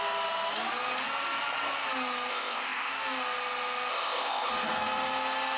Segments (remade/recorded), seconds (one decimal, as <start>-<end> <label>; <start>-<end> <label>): 0.0-2.3 recorded; 2.3-2.9 remade; 2.9-3.9 recorded; 3.9-4.5 remade; 4.5-5.6 recorded